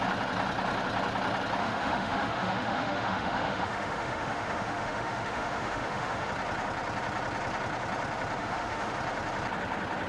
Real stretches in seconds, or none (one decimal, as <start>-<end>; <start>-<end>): 0.0-1.6; 6.3-8.4; 8.9-10.1